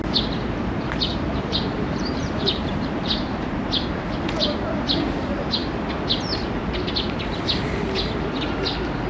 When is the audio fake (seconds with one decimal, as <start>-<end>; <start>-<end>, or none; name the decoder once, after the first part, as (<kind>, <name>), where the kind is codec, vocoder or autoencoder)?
1.1-3.6 (vocoder, BigVGAN v2)